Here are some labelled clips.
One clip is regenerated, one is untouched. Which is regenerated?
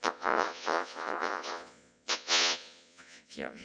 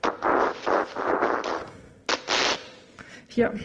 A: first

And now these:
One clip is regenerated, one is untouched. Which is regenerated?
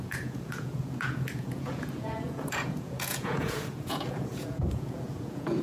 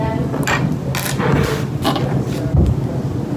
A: first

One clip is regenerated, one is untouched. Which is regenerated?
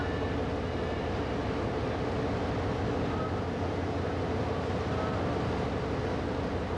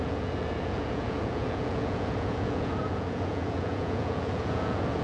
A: second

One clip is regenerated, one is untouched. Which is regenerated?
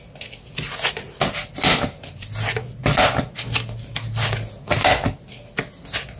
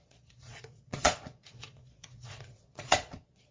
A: second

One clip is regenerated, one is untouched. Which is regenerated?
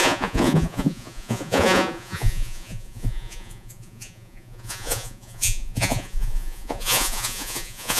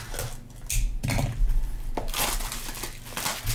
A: first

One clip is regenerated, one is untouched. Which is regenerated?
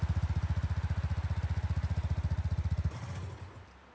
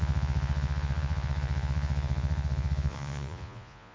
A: second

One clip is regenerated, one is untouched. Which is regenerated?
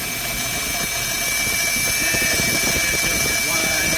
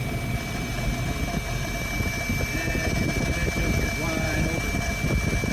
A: first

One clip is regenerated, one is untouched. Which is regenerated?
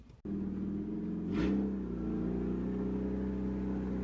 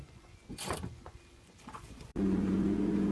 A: second